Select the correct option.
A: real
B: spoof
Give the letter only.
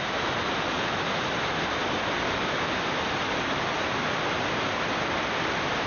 A